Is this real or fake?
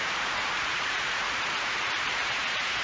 fake